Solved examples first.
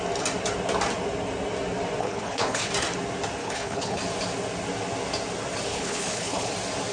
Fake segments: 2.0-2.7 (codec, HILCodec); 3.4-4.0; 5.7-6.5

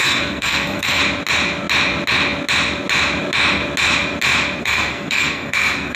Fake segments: 0.0-1.0 (codec, SNAC); 4.6-6.0

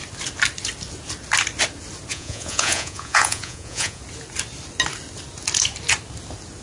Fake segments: 2.1-4.0 (vocoder, Vocos)

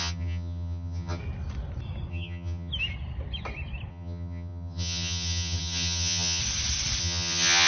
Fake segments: 0.0-1.2 (vocoder, HiFi-GAN); 2.1-2.7; 3.9-6.4; 7.0-7.7

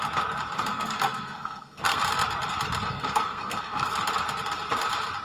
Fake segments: 0.7-2.0 (codec, SNAC); 2.9-3.9